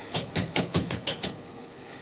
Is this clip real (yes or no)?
no